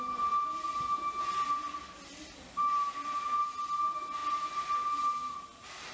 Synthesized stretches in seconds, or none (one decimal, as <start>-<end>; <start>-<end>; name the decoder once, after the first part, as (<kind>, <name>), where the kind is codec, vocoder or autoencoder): none